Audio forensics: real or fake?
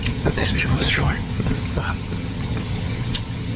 fake